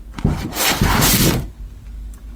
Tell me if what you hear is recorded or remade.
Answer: recorded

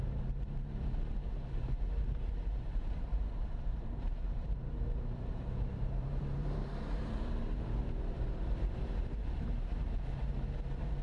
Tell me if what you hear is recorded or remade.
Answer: remade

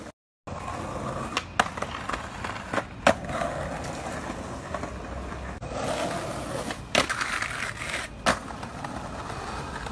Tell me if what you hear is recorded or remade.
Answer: recorded